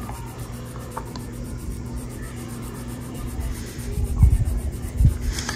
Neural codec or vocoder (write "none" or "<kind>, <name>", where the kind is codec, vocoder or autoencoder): vocoder, BigVGAN v2